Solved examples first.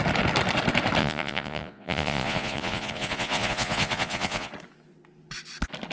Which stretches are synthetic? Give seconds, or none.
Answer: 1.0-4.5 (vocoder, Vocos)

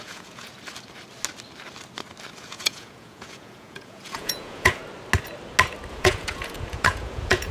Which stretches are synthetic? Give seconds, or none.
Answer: 0.0-0.5 (vocoder, Vocos); 2.4-4.8; 5.9-7.5

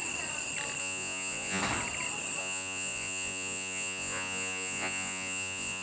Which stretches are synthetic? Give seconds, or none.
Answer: 0.8-1.6 (vocoder, Vocos); 2.4-5.8

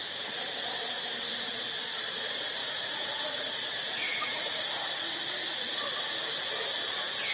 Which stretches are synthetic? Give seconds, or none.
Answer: 2.6-4.9 (vocoder, Vocos); 5.5-6.0

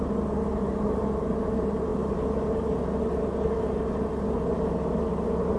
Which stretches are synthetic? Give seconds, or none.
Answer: none

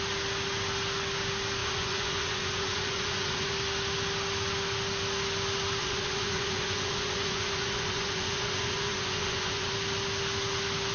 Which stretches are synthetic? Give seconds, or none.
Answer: 1.6-3.5 (vocoder, Vocos); 5.8-9.7

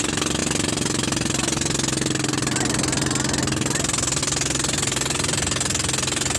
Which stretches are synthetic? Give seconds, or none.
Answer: none